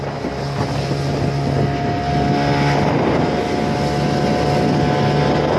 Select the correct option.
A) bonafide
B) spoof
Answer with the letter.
A